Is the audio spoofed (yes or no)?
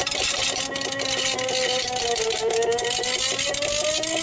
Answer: no